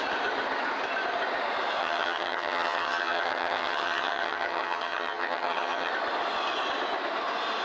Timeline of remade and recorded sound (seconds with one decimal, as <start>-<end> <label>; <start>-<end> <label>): 0.0-1.8 recorded; 1.8-5.9 remade; 5.9-7.6 recorded